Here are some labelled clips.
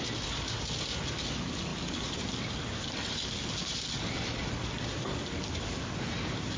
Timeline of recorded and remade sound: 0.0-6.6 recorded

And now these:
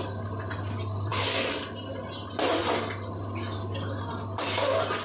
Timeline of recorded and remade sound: 0.0-5.0 recorded

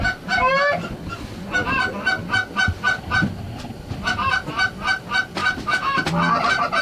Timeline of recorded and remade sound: 0.0-5.4 recorded; 5.4-6.0 remade; 6.0-6.8 recorded

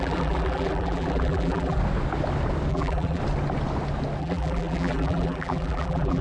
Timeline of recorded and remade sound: 0.0-1.8 remade; 1.8-2.7 recorded; 2.7-3.2 remade; 3.2-4.2 recorded; 4.2-6.2 remade

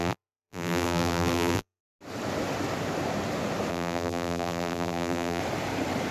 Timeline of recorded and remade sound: 0.0-1.8 remade; 1.8-3.7 recorded; 3.7-5.4 remade; 5.4-6.1 recorded